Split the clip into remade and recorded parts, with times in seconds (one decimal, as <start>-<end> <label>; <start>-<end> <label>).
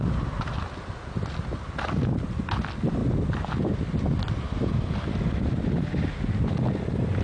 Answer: 0.0-1.6 recorded; 1.6-2.4 remade; 2.4-7.2 recorded